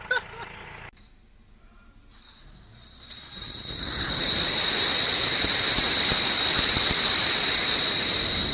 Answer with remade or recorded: recorded